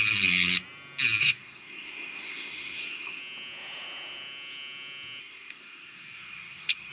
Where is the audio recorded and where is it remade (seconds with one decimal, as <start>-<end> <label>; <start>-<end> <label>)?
0.0-1.2 recorded; 1.2-3.2 remade; 3.2-5.2 recorded; 5.2-6.9 remade